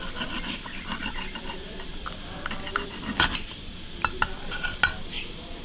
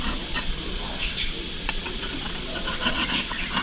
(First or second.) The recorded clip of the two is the first